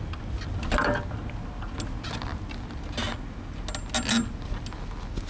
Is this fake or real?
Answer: real